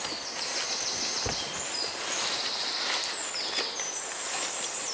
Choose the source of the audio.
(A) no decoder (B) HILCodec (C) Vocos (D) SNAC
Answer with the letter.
A